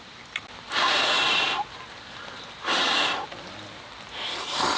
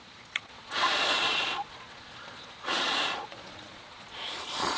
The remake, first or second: second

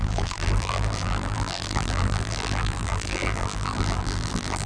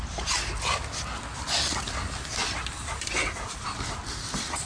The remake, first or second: first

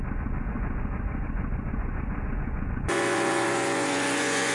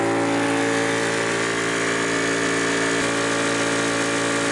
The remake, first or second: first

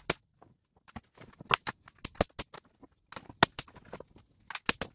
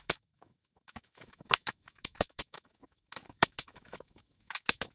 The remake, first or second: second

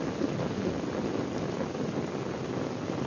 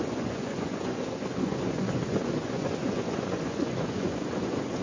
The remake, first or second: second